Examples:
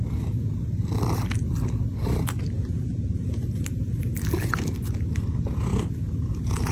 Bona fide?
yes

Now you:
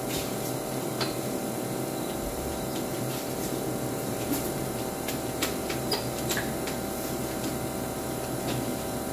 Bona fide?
no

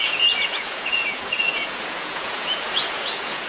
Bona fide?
no